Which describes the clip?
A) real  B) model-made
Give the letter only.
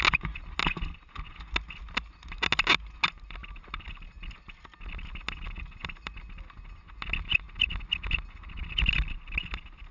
A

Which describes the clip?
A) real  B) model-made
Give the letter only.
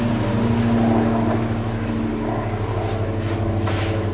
A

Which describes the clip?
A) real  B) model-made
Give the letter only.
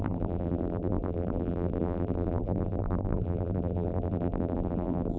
B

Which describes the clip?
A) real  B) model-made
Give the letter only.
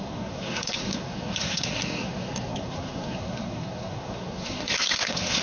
B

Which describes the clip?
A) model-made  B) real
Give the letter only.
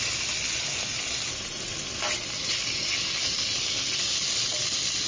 B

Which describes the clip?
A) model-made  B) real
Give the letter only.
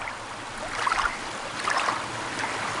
B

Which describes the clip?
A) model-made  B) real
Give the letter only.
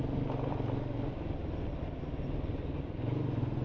B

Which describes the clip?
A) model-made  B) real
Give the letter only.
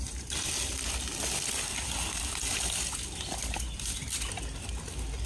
B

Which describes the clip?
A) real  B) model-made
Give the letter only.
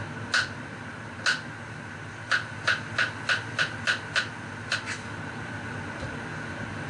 A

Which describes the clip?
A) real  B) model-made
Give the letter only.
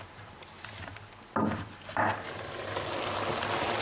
A